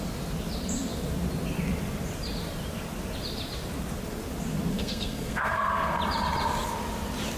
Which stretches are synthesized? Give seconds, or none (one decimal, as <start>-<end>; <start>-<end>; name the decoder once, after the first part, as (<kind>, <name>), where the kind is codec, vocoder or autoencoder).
4.7-6.0 (codec, SNAC)